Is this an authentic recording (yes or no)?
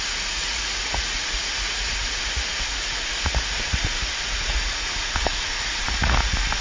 no